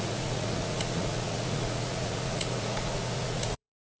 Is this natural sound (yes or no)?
no